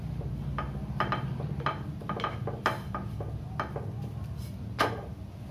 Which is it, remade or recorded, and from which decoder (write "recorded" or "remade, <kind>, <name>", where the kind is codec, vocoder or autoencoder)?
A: recorded